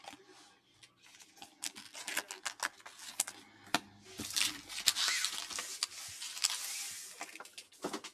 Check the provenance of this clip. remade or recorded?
recorded